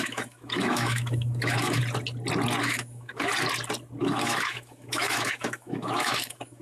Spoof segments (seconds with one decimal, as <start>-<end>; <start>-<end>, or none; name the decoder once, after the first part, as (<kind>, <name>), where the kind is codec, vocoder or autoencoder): 0.0-1.8 (autoencoder, DAC-VAE); 2.6-3.3; 4.0-6.6

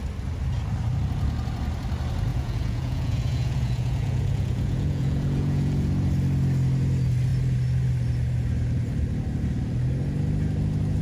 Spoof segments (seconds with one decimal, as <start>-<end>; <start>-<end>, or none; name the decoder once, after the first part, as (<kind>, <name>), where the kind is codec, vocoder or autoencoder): 2.3-5.9 (vocoder, Vocos)

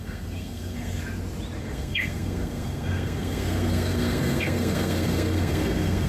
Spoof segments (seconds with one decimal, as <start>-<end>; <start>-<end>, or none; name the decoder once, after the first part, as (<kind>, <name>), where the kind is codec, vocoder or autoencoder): 0.0-1.0 (codec, SNAC); 1.6-6.1

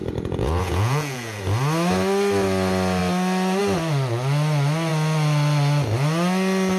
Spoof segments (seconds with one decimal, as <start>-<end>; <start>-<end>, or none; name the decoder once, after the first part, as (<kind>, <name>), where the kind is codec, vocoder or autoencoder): 0.0-1.4 (vocoder, Vocos)

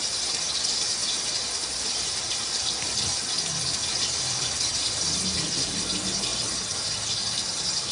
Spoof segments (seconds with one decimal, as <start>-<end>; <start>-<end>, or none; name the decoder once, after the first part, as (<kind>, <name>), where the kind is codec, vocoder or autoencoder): none

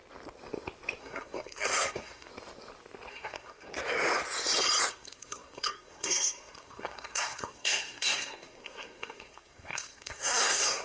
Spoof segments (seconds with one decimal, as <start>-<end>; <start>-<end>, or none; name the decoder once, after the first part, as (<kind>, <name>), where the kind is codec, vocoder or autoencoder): 1.0-2.3 (codec, SNAC); 3.1-3.7; 4.9-10.8

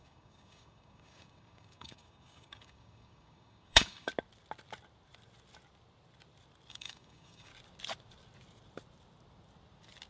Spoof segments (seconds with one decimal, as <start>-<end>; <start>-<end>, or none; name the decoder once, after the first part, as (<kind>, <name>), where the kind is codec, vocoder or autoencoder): 0.0-4.1 (codec, DAC); 6.7-7.5